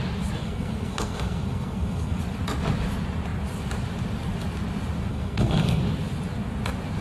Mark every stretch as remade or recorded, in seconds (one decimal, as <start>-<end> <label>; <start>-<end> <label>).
0.0-0.4 recorded; 0.4-2.2 remade; 2.2-5.1 recorded; 5.1-5.8 remade; 5.8-7.0 recorded